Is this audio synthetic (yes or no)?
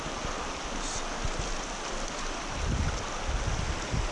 no